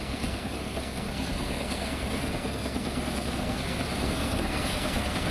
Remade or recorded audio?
remade